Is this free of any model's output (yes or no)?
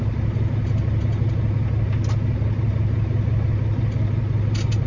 yes